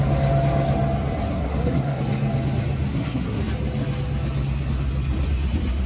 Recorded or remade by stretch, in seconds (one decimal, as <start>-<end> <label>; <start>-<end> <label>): 0.0-1.3 recorded; 1.3-2.0 remade; 2.0-2.9 recorded; 2.9-3.4 remade; 3.4-5.9 recorded